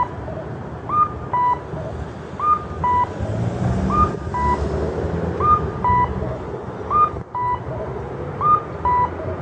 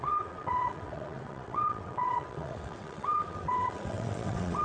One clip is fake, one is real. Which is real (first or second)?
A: first